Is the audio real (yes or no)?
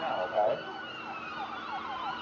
yes